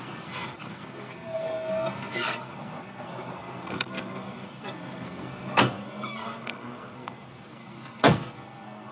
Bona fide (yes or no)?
no